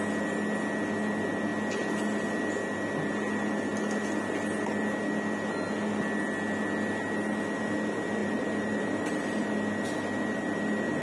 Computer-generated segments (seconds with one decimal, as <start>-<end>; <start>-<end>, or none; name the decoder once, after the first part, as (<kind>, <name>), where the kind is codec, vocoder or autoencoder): 8.2-9.4 (vocoder, BigVGAN v2)